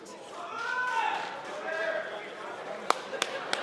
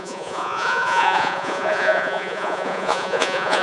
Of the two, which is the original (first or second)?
first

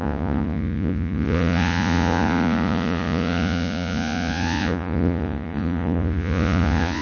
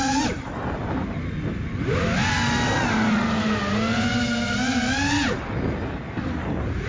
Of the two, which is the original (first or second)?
second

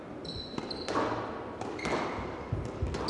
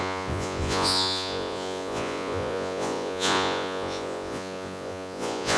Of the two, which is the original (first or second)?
first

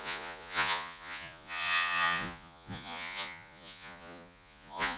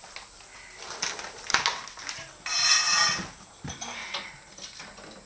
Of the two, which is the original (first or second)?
second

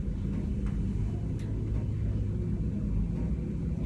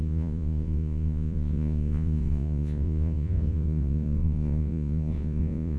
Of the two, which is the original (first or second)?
first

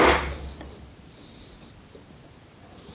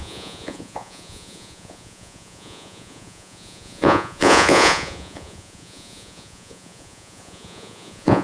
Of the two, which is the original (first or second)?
first